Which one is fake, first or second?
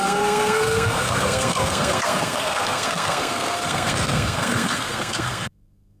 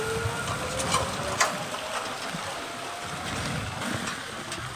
first